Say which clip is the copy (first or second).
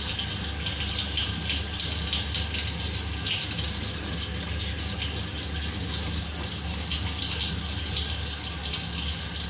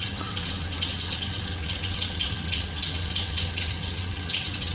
second